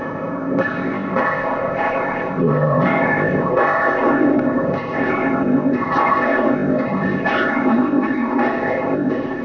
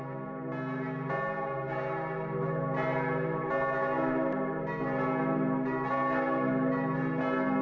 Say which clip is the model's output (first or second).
first